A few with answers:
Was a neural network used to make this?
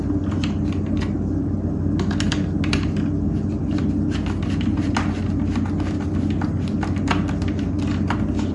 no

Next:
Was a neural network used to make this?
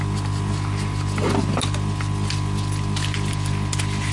no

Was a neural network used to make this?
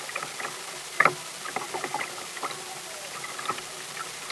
no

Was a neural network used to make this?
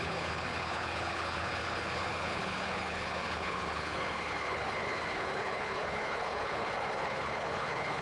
yes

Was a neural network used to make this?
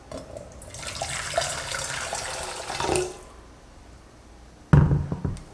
no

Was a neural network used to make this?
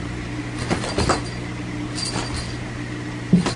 no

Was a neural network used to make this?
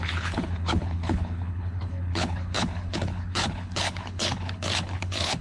yes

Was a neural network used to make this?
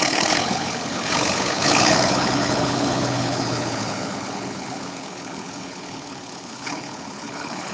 yes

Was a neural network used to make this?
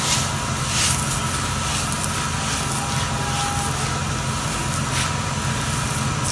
no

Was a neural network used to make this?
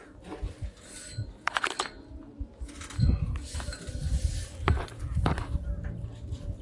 no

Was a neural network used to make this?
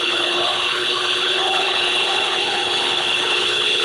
yes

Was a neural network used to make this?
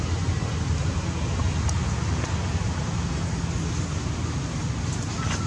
no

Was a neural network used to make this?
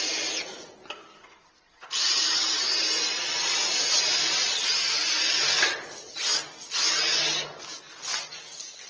no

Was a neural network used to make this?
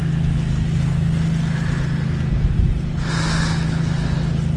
no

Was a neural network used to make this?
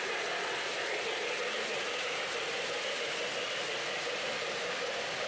no